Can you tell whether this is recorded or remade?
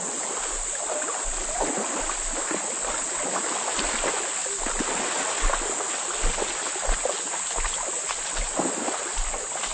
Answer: recorded